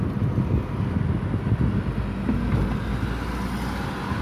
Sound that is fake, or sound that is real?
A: real